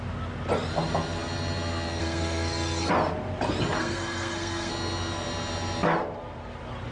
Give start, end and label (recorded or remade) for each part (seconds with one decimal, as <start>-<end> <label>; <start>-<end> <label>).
0.0-2.0 recorded; 2.0-2.9 remade; 2.9-3.8 recorded; 3.8-4.7 remade; 4.7-6.9 recorded